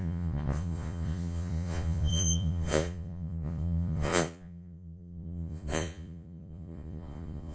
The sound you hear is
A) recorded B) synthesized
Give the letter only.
B